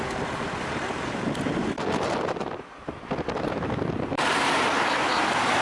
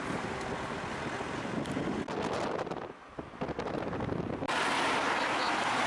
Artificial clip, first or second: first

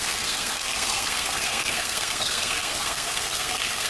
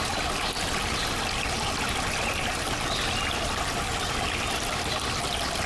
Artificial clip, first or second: first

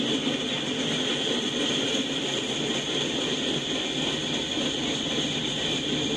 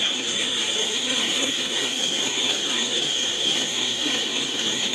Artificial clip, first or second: second